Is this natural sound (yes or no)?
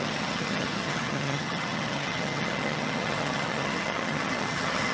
no